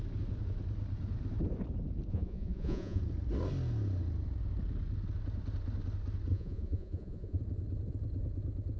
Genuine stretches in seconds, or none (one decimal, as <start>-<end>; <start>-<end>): 0.0-2.1; 3.0-6.3; 7.4-8.8